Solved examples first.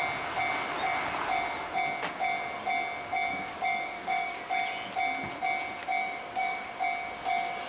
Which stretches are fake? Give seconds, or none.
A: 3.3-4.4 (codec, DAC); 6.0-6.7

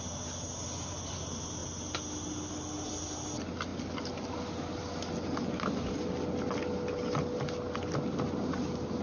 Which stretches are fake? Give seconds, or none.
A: none

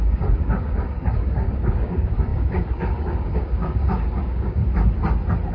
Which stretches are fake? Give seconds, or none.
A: 0.0-4.6 (codec, DAC)

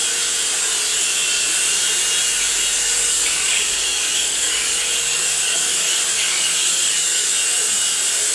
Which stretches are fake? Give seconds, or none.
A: 3.0-7.3 (codec, DAC)

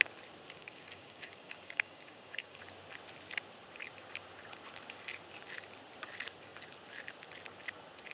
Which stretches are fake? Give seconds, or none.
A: 0.6-2.6 (codec, DAC)